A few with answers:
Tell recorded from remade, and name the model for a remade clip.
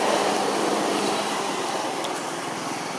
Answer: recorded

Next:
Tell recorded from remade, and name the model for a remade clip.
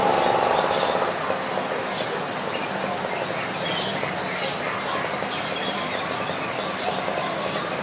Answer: recorded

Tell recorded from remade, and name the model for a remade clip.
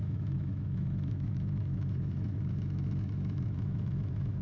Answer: remade, autoencoder, DAC-VAE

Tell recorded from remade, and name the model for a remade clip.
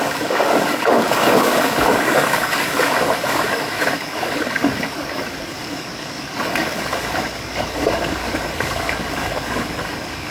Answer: remade, codec, DAC